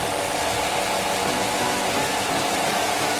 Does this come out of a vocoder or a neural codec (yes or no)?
no